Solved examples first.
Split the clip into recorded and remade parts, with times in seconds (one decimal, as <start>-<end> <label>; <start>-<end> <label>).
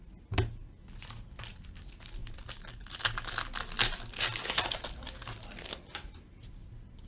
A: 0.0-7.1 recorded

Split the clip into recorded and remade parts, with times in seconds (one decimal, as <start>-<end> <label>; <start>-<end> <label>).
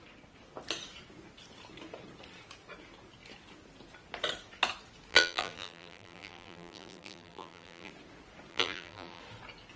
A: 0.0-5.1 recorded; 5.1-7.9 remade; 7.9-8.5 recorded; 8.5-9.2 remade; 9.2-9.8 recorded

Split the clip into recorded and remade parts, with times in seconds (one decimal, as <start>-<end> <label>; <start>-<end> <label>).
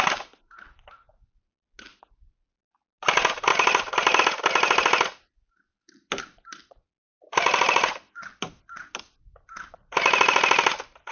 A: 0.0-3.5 recorded; 3.5-4.2 remade; 4.2-11.1 recorded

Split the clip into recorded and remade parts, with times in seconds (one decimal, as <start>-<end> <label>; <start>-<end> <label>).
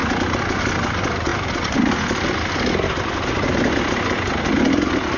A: 0.0-5.2 recorded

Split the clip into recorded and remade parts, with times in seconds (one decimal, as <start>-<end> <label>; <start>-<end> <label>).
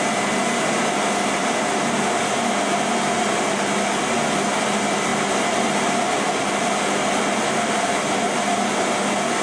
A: 0.0-9.4 recorded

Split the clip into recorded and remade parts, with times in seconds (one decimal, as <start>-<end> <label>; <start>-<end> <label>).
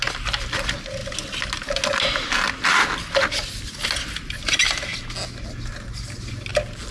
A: 0.0-6.9 recorded